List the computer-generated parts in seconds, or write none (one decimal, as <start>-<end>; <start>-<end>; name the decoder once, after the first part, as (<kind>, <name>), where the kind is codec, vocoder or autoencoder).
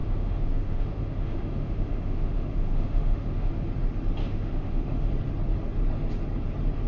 0.0-3.5 (autoencoder, DAC-VAE); 4.2-5.1